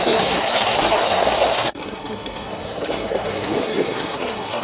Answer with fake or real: fake